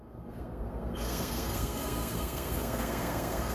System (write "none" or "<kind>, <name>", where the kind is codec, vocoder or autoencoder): codec, SNAC